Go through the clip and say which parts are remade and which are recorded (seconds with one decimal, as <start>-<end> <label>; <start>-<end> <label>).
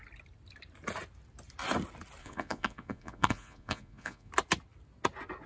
0.0-2.2 recorded; 2.2-4.3 remade; 4.3-5.5 recorded